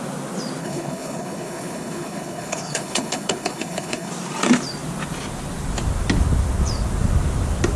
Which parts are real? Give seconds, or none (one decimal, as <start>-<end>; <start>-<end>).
0.0-0.6; 4.1-7.8